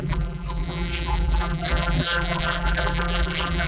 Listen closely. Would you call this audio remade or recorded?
remade